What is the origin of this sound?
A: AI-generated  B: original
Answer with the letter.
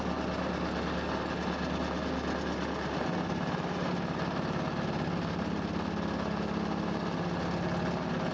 B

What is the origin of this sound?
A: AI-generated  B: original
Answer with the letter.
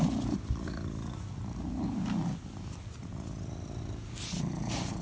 B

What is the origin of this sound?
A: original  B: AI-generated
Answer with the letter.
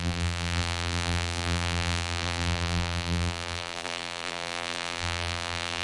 B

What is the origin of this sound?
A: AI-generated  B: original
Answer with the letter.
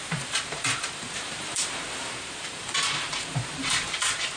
A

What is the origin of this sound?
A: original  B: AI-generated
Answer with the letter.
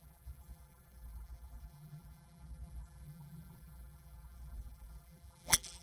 B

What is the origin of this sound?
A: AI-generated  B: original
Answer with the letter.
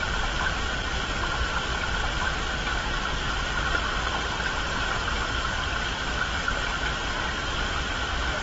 B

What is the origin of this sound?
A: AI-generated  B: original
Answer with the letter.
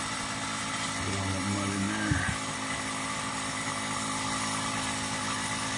B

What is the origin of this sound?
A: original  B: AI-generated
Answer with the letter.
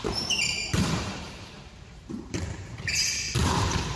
B